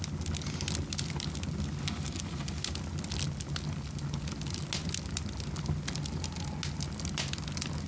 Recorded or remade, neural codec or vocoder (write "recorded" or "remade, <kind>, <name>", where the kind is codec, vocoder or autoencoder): recorded